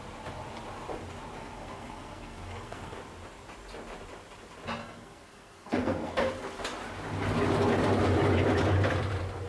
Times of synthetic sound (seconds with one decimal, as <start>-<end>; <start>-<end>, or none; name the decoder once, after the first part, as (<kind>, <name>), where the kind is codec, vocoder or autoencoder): 1.4-3.0 (codec, SNAC); 4.8-6.3